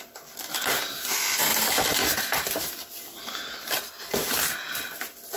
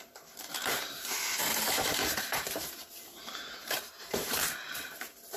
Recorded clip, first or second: first